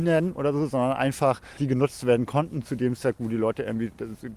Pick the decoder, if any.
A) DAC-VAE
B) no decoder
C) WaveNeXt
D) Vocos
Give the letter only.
B